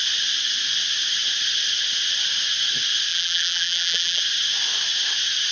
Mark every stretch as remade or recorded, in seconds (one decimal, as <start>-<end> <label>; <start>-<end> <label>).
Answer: 0.0-3.1 recorded; 3.1-4.2 remade; 4.2-5.5 recorded